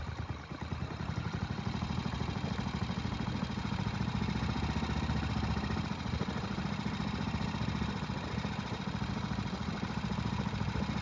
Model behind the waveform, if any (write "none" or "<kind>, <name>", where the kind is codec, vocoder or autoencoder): vocoder, BigVGAN v2